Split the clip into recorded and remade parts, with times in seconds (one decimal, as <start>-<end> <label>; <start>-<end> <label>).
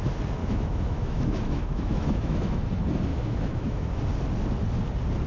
0.0-0.4 recorded; 0.4-2.6 remade; 2.6-3.1 recorded; 3.1-4.0 remade; 4.0-5.3 recorded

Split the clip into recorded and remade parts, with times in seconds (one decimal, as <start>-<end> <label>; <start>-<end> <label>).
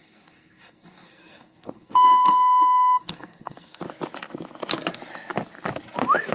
0.0-3.8 remade; 3.8-6.3 recorded